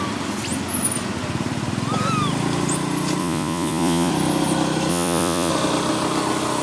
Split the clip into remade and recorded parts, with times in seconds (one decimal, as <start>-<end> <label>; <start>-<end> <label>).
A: 0.0-3.2 recorded; 3.2-4.1 remade; 4.1-4.9 recorded; 4.9-5.5 remade; 5.5-6.6 recorded